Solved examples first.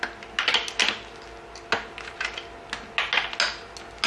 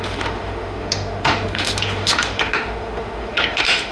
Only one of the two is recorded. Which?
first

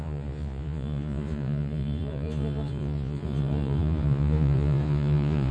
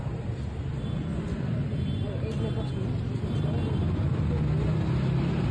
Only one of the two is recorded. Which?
second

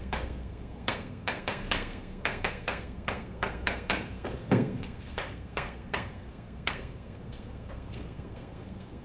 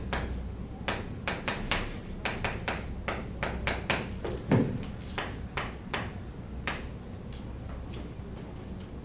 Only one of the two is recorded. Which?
second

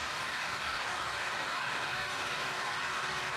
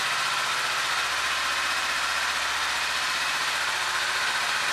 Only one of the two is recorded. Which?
second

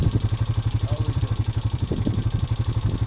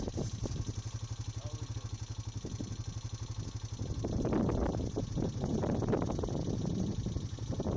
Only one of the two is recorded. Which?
second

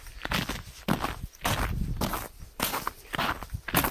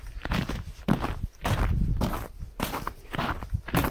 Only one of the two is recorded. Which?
first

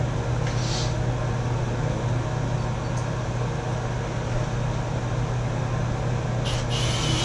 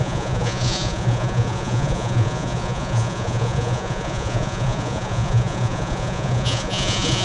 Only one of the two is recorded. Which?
first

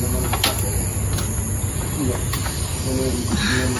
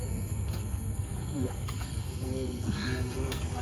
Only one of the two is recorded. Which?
first